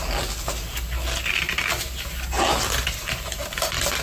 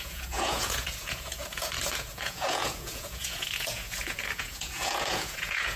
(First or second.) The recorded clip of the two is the first